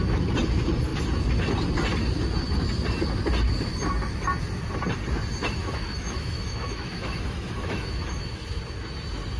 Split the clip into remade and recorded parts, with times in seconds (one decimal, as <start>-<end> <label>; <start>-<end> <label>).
0.0-5.6 recorded; 5.6-8.6 remade; 8.6-9.4 recorded